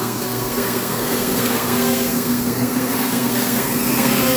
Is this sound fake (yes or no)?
yes